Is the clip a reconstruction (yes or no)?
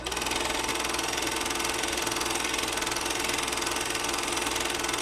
no